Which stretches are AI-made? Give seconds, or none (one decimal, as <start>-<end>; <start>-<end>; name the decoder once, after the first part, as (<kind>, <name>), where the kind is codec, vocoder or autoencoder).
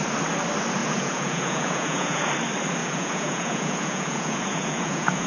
0.8-2.3 (vocoder, Vocos); 2.8-5.3